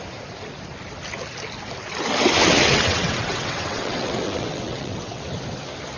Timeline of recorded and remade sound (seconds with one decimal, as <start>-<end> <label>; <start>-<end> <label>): 0.0-2.4 recorded; 2.4-5.2 remade; 5.2-6.0 recorded